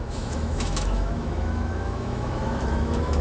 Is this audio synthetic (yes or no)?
yes